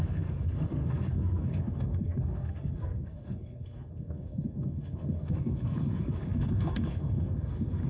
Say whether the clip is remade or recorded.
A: remade